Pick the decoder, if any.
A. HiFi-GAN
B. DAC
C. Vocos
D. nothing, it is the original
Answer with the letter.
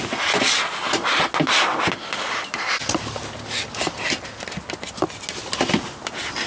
D